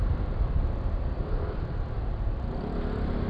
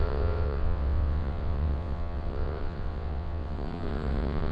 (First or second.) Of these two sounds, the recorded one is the first